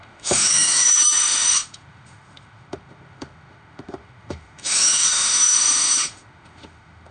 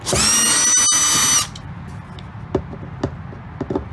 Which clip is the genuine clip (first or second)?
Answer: second